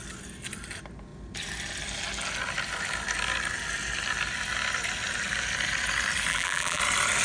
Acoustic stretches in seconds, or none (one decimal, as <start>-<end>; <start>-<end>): 0.0-6.3; 6.8-7.2